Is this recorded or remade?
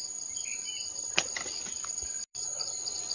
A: recorded